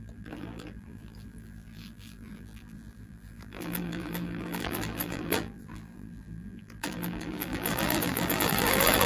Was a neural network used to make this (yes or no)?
yes